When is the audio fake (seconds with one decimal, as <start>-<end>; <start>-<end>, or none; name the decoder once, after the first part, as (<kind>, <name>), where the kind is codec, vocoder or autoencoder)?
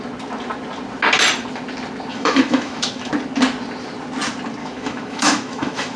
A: 2.1-3.1 (autoencoder, DAC-VAE); 4.6-6.0